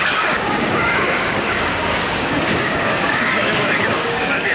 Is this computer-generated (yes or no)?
yes